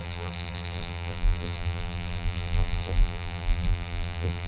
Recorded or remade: remade